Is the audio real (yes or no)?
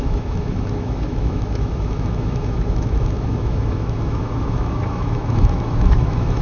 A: no